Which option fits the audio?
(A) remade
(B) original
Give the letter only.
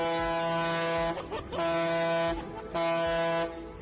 B